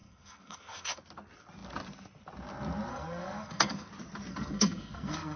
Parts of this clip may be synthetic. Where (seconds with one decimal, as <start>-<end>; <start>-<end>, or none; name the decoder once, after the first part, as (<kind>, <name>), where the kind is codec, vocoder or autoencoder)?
0.0-1.0 (codec, SNAC); 2.9-3.9; 4.3-5.4